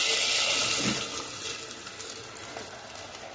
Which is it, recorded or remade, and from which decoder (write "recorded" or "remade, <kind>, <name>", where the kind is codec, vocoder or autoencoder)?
recorded